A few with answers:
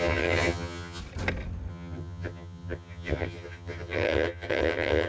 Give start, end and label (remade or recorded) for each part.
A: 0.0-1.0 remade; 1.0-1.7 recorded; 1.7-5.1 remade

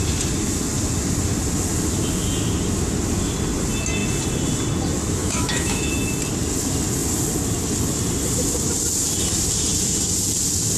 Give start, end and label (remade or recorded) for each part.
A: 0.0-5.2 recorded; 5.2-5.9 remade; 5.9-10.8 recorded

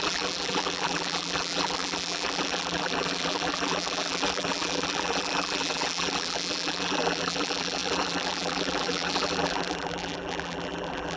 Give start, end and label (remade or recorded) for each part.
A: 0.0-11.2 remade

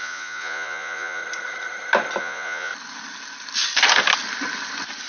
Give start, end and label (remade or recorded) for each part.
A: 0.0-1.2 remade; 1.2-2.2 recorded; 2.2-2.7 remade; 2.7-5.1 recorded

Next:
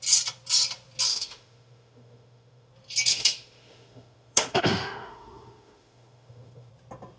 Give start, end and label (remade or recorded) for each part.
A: 0.0-1.1 recorded; 1.1-2.7 remade; 2.7-3.1 recorded; 3.1-6.7 remade; 6.7-7.2 recorded

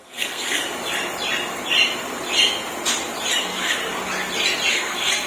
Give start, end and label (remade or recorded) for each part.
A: 0.0-0.6 remade; 0.6-3.4 recorded; 3.4-3.8 remade; 3.8-4.7 recorded; 4.7-5.3 remade

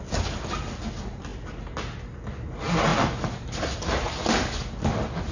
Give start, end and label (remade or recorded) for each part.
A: 0.0-5.3 recorded

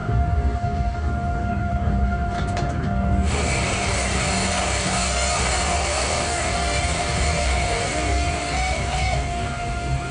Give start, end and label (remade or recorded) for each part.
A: 0.0-10.1 remade